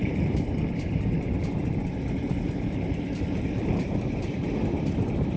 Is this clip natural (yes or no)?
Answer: no